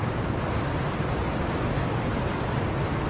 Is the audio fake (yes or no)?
no